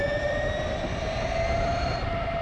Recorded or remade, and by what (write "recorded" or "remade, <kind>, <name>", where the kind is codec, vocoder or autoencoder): recorded